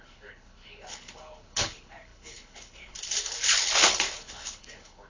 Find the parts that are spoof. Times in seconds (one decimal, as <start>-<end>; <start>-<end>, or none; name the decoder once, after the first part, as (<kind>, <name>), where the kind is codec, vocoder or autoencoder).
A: 0.0-5.1 (codec, HILCodec)